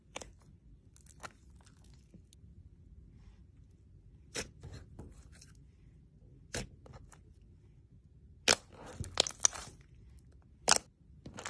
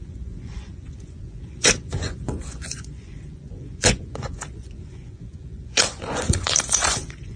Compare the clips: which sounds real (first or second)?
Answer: first